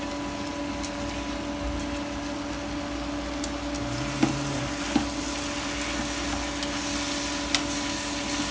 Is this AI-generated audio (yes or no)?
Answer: no